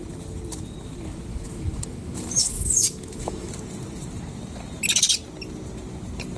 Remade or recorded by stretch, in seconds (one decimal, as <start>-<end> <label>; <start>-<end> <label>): 0.0-1.3 recorded; 1.3-3.5 remade; 3.5-6.4 recorded